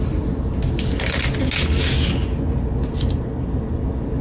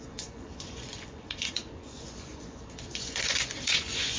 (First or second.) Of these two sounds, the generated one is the second